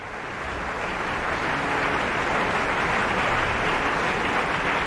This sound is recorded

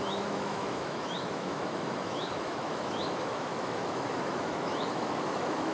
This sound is remade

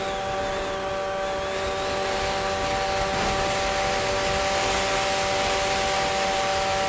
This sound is recorded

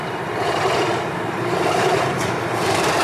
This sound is remade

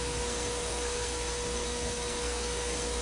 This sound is remade